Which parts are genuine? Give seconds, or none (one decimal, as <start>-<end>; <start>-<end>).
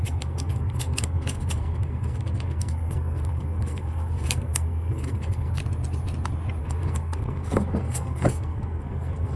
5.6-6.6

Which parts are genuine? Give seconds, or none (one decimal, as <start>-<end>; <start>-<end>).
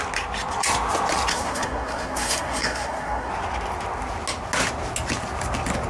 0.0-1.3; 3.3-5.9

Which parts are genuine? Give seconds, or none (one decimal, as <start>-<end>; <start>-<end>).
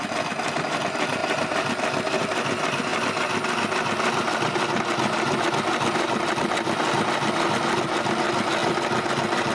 0.0-9.5